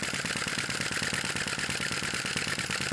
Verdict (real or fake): fake